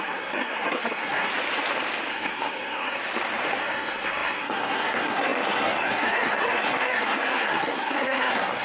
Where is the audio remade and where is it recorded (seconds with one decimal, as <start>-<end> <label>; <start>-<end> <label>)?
0.0-1.3 remade; 1.3-2.1 recorded; 2.1-3.0 remade; 3.0-3.6 recorded; 3.6-8.6 remade